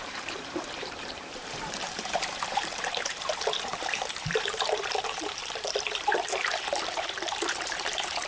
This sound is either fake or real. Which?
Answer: fake